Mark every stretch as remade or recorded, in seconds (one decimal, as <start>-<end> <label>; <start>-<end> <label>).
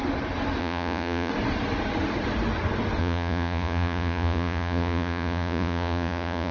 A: 0.0-0.6 recorded; 0.6-1.3 remade; 1.3-3.0 recorded; 3.0-6.5 remade